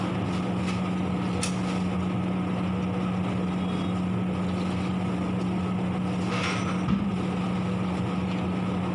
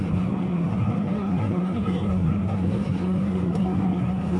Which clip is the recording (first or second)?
first